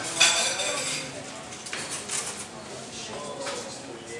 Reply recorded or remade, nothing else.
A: recorded